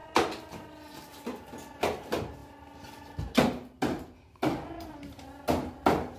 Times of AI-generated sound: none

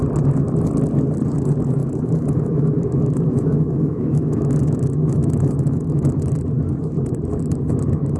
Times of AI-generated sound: 1.8-6.3

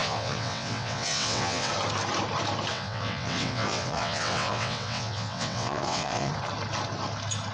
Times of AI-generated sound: 0.0-1.7; 2.7-6.3

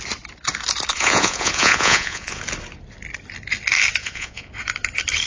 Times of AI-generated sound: 0.9-2.4; 4.0-4.5

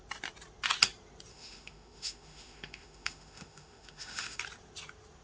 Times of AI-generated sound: 1.3-4.4

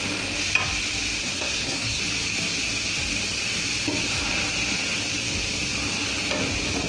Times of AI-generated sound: 1.2-2.0